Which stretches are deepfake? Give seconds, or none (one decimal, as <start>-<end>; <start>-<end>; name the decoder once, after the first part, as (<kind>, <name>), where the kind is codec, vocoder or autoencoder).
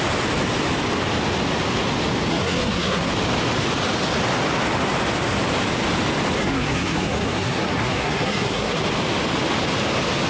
2.3-3.1 (codec, SNAC); 6.4-8.8